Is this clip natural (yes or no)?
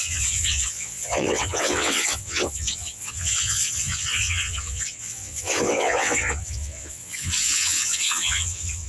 no